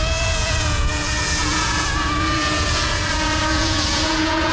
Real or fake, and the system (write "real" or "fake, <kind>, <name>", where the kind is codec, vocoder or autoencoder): fake, vocoder, Vocos